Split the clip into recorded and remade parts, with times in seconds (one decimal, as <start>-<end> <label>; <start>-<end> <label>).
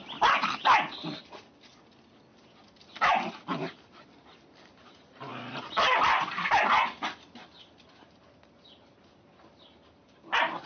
0.0-2.3 recorded; 2.3-3.1 remade; 3.1-5.3 recorded; 5.3-6.7 remade; 6.7-10.7 recorded